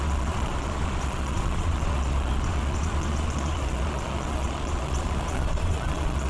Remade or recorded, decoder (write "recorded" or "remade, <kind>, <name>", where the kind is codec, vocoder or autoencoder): remade, vocoder, Vocos